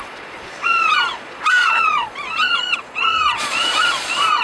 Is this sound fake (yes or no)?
yes